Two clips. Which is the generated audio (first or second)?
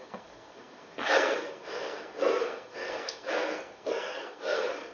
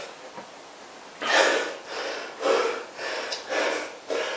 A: first